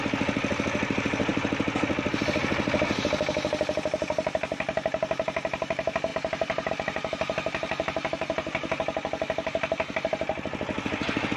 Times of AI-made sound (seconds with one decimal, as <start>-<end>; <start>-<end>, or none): none